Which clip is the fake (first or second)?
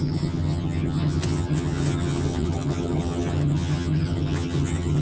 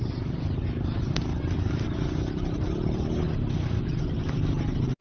first